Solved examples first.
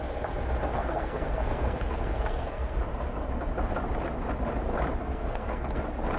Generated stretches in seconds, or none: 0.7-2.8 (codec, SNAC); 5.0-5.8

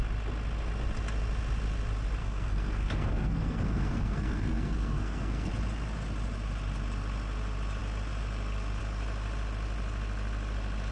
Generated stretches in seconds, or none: 2.2-5.5 (codec, SNAC)

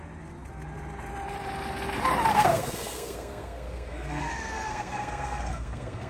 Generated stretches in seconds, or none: 2.3-6.1 (codec, SNAC)

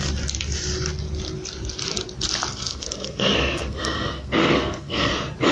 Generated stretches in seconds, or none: 2.5-5.1 (codec, SNAC)

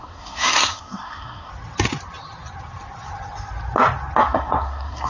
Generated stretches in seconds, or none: 0.0-1.5 (codec, SNAC); 4.2-5.1

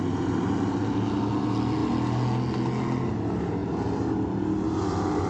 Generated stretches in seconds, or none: none

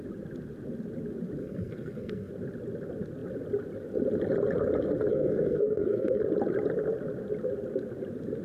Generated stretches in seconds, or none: 1.4-2.3 (codec, SNAC); 5.1-6.2

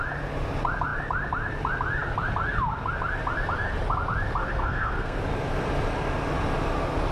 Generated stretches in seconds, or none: 4.4-5.2 (codec, SNAC)